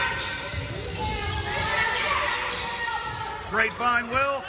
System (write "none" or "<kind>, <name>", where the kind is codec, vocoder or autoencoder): none